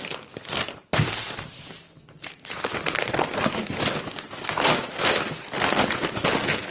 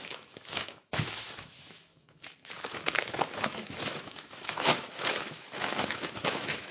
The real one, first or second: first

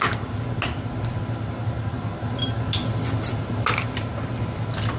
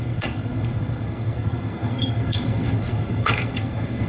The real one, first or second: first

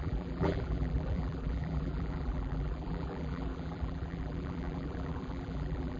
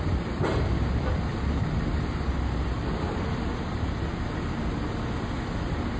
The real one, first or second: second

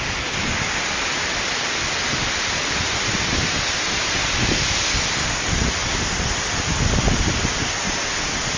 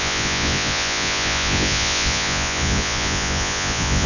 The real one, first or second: first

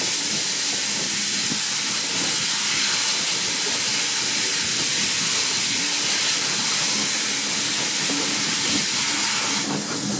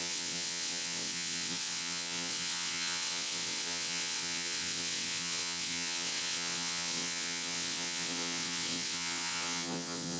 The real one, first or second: first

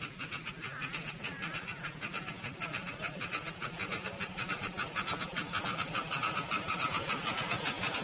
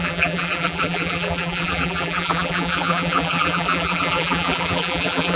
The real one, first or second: first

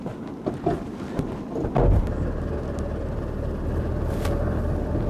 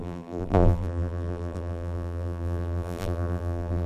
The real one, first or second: first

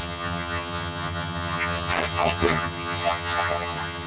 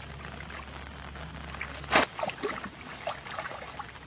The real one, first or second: second